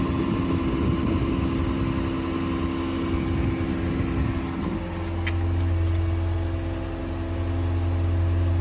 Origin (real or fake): real